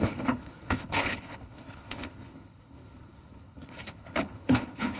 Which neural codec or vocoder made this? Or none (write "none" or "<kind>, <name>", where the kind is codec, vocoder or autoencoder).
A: codec, HILCodec